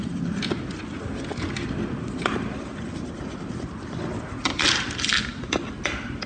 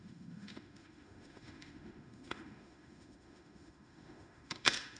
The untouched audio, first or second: first